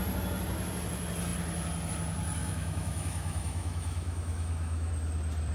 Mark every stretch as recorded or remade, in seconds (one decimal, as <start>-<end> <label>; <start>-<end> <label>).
0.0-2.4 recorded; 2.4-4.9 remade; 4.9-5.5 recorded